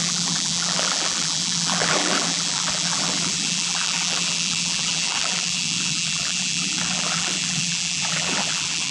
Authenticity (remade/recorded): remade